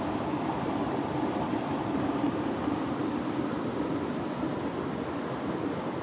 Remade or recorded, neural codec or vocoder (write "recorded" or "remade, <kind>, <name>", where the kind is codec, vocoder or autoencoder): recorded